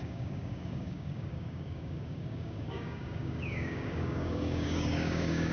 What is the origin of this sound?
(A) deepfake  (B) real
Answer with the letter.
A